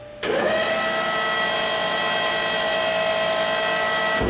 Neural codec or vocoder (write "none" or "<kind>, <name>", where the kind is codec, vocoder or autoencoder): none